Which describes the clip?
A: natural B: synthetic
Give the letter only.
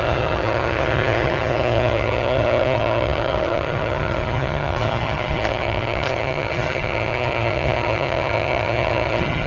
B